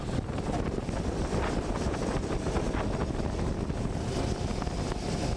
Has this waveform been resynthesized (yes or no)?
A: no